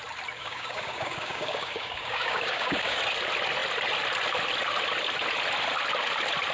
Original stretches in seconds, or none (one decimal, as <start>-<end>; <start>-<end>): 0.0-0.4; 3.0-6.5

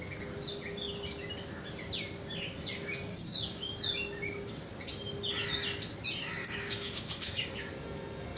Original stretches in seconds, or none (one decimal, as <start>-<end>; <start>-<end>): 0.0-3.1; 3.7-6.4; 7.5-8.4

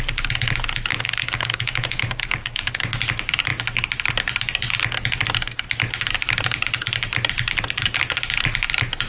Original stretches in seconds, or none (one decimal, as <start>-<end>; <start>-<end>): 0.0-0.9; 3.0-9.1

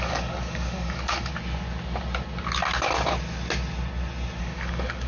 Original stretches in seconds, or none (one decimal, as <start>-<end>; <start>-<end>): 1.3-4.4

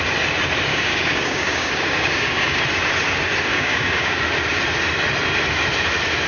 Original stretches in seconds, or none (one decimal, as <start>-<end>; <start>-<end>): 0.0-0.7; 2.6-3.5; 4.2-6.3

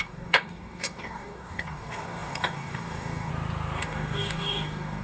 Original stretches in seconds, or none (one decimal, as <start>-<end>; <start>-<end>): 3.3-3.8

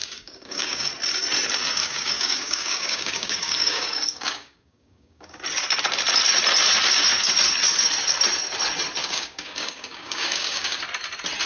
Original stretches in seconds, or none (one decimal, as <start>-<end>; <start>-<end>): 0.9-1.8; 5.4-9.0; 10.8-11.5